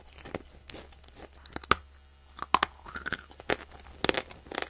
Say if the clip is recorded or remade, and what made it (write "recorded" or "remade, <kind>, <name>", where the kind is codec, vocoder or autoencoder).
recorded